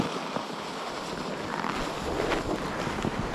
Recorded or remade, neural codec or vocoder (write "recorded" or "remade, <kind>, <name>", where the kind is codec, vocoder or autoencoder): recorded